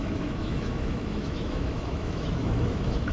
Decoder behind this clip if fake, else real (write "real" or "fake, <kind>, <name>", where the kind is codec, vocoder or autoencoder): fake, autoencoder, DAC-VAE